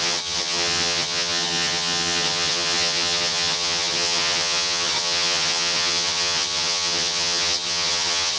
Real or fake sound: fake